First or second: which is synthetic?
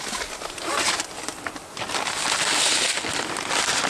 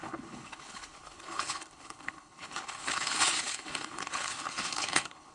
second